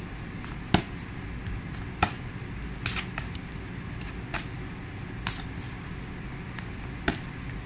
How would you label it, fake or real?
real